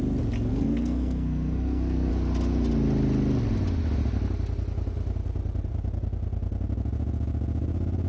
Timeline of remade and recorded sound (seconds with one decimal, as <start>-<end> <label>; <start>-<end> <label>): 0.0-0.5 recorded; 0.5-2.1 remade; 2.1-8.1 recorded